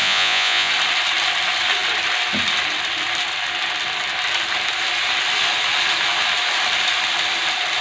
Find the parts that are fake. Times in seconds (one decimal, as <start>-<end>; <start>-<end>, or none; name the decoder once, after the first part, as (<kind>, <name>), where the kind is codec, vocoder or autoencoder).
0.0-0.7 (vocoder, Vocos)